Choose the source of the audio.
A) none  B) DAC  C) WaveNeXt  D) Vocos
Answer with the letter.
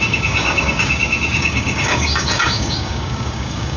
B